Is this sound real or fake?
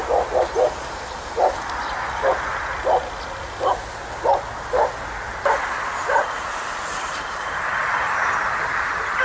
real